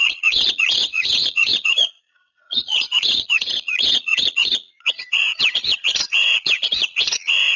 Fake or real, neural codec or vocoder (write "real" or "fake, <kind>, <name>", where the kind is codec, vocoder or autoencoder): fake, vocoder, Vocos